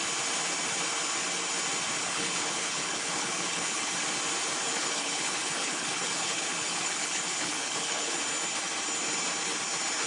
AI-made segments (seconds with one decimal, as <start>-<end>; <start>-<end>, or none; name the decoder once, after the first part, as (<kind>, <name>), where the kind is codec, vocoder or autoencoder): 2.0-3.9 (codec, HILCodec); 4.7-8.2